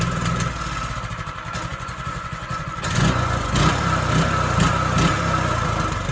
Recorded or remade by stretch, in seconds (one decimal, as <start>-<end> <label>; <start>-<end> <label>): 0.0-1.7 recorded; 1.7-3.8 remade; 3.8-6.1 recorded